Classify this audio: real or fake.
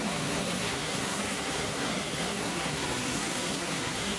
fake